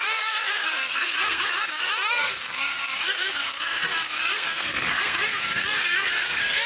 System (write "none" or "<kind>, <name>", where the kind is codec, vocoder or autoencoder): codec, SNAC